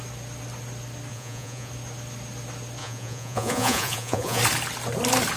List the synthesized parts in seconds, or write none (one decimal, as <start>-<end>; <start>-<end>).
1.1-1.7; 2.8-4.4